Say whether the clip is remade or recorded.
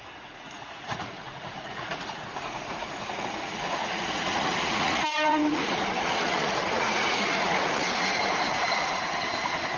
remade